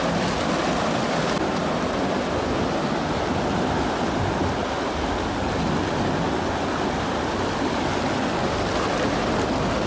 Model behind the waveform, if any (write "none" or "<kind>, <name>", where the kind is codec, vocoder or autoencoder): none